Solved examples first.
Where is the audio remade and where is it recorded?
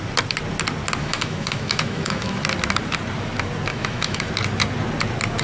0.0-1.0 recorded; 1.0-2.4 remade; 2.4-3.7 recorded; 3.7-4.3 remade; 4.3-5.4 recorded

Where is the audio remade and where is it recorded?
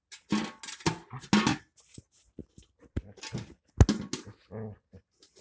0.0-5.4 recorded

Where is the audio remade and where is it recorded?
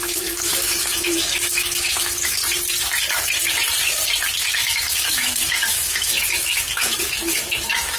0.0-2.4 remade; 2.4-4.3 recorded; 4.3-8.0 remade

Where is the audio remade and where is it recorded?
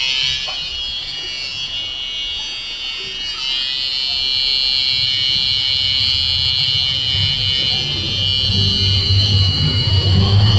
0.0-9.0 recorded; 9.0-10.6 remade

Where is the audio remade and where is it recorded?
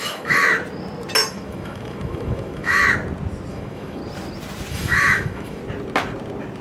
0.0-0.4 remade; 0.4-1.3 recorded; 1.3-2.8 remade; 2.8-3.5 recorded; 3.5-4.0 remade; 4.0-4.7 recorded; 4.7-5.6 remade; 5.6-6.6 recorded